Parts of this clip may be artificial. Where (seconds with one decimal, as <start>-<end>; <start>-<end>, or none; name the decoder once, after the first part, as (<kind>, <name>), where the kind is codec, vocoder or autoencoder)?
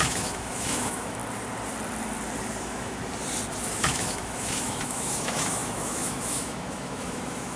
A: 0.0-1.2 (autoencoder, DAC-VAE); 2.6-3.0; 3.8-7.6